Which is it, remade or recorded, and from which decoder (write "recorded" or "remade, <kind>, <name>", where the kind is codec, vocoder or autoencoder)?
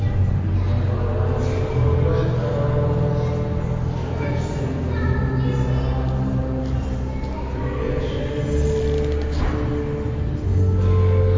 recorded